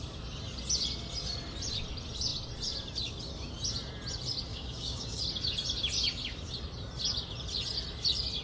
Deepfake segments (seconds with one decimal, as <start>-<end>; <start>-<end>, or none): 4.5-5.2